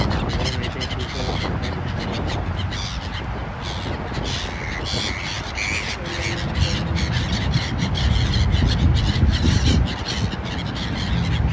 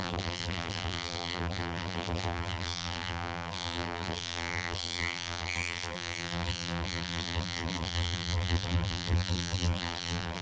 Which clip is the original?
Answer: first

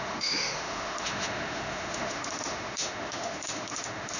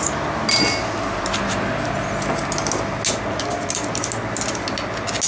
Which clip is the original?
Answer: second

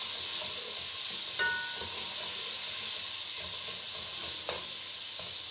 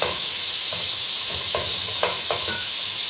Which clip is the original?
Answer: first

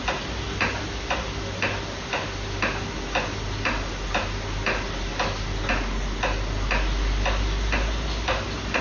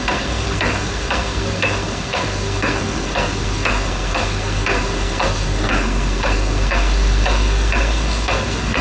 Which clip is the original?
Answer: first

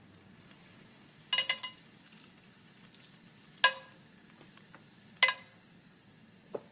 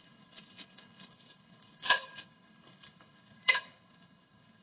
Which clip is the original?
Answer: first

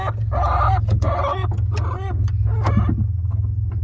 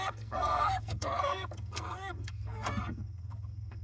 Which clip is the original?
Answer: first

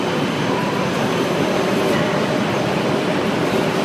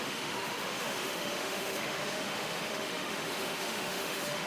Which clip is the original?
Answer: first